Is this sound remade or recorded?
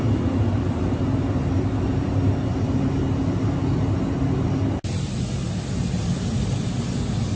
recorded